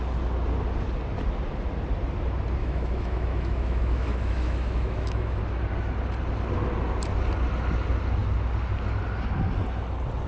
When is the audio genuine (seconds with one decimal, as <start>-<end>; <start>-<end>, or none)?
0.0-2.6; 5.4-10.3